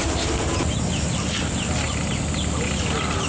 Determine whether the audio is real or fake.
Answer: real